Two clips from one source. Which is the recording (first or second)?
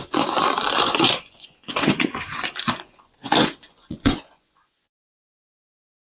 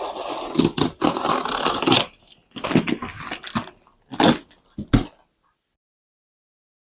second